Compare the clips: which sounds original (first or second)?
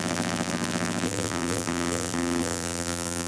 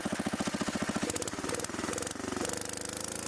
second